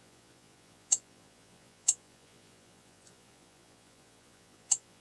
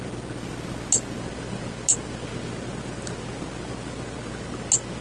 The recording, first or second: second